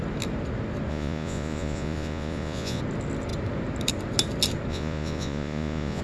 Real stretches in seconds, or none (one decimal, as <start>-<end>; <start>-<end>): 0.0-0.9; 2.8-4.7